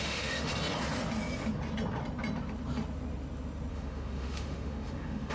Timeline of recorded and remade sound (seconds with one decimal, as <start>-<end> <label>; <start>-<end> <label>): 0.0-0.5 remade; 0.5-3.7 recorded; 3.7-5.3 remade